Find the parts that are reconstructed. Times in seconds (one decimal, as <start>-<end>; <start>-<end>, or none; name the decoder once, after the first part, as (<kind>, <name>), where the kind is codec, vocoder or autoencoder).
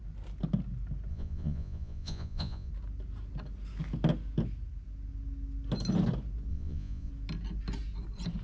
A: 1.1-2.7 (vocoder, Vocos); 6.5-7.1